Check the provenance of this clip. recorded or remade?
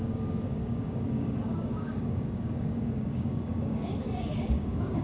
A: remade